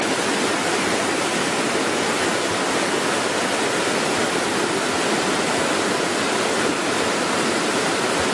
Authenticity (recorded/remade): recorded